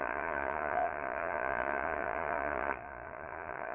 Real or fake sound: fake